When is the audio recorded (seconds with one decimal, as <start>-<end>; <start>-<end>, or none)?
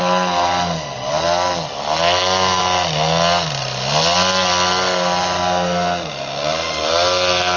0.0-7.6